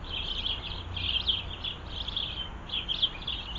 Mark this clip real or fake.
real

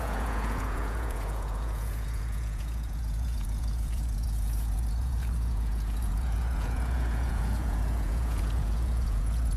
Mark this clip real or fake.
fake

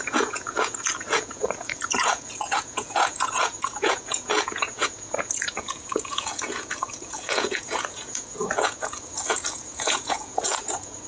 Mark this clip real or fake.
fake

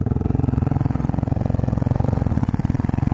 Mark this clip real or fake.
fake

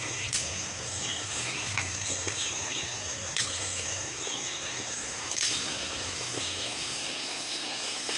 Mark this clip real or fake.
fake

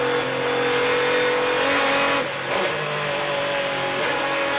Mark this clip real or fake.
real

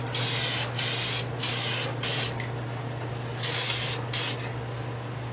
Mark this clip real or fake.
real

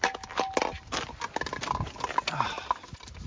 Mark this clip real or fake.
real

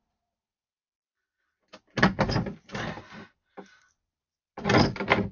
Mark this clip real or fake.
real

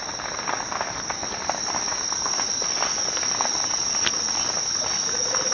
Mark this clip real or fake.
real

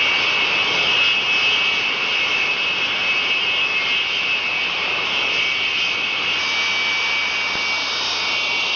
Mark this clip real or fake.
real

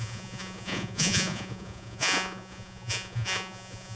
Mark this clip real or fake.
fake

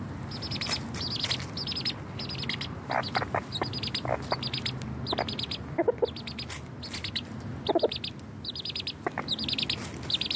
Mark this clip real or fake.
real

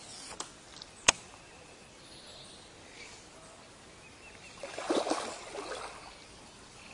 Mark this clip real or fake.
real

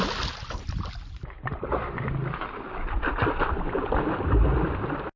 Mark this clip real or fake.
real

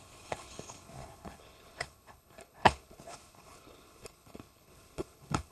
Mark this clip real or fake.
fake